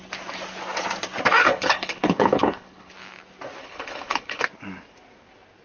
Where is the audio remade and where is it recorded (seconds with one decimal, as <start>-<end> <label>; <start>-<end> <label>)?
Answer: 0.0-1.4 recorded; 1.4-2.9 remade; 2.9-3.6 recorded; 3.6-4.4 remade; 4.4-5.6 recorded